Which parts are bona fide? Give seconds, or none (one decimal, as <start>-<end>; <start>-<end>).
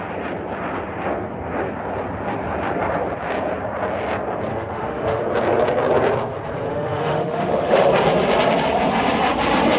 0.0-4.5; 5.2-6.7; 7.9-9.8